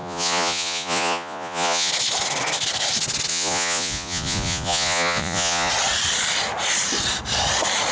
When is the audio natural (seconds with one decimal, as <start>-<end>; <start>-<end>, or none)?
1.9-3.3; 5.7-7.9